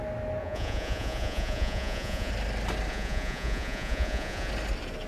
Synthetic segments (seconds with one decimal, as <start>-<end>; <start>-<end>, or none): 0.4-2.3; 2.9-4.5